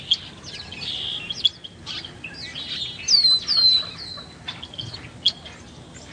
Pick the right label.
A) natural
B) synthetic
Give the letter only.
A